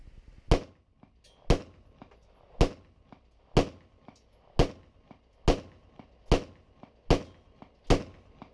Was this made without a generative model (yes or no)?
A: yes